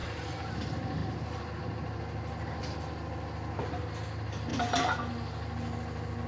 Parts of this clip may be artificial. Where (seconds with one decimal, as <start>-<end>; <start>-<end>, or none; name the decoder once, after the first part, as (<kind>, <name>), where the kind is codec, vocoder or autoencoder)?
0.0-0.6 (vocoder, BigVGAN v2)